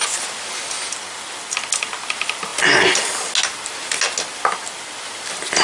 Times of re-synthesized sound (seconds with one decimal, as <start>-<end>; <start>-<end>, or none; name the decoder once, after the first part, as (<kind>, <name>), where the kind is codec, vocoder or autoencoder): none